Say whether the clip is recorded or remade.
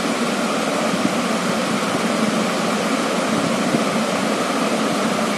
recorded